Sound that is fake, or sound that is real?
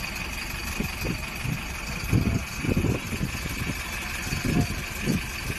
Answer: real